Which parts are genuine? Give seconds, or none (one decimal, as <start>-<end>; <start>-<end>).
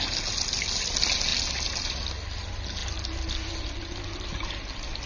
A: 0.0-5.1